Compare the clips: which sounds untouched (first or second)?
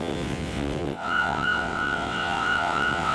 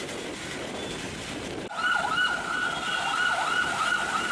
second